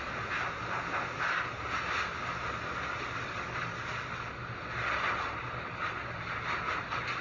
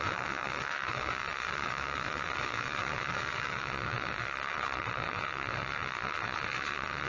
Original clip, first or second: first